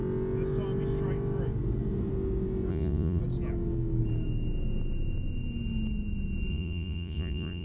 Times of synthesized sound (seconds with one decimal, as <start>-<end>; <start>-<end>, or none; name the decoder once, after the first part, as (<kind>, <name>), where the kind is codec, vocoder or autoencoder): 2.7-3.2 (vocoder, Vocos); 6.5-7.6